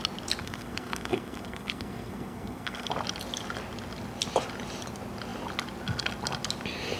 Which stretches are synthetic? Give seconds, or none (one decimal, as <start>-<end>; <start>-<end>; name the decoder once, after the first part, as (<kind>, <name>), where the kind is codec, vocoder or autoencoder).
0.4-2.9 (codec, SNAC)